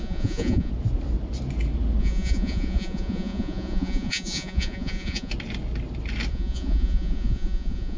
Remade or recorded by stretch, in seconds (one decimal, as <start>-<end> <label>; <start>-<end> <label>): 0.0-0.7 remade; 0.7-2.0 recorded; 2.0-5.3 remade; 5.3-6.3 recorded; 6.3-8.0 remade